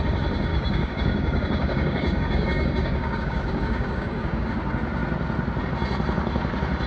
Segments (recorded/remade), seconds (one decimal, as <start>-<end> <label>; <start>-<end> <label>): 0.0-0.5 recorded; 0.5-4.5 remade; 4.5-6.9 recorded